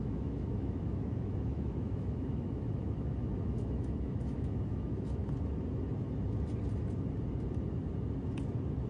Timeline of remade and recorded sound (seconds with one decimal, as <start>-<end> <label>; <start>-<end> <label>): 0.0-5.2 remade; 5.2-8.9 recorded